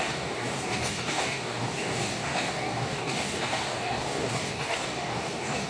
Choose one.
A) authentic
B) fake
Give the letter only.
B